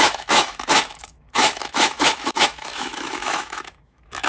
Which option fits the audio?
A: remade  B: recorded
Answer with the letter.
A